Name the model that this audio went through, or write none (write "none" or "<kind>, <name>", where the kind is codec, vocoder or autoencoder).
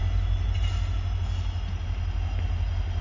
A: none